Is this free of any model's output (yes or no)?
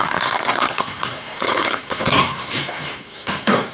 no